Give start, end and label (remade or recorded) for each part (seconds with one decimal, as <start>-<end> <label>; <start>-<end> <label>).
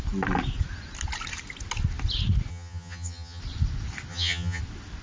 0.0-2.5 recorded; 2.5-3.4 remade; 3.4-4.1 recorded; 4.1-4.6 remade; 4.6-5.0 recorded